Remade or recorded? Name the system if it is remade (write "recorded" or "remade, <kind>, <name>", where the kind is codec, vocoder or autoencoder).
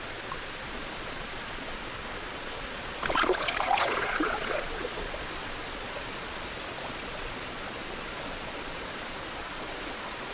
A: remade, vocoder, Vocos